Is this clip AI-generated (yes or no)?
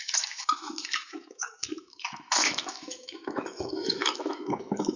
yes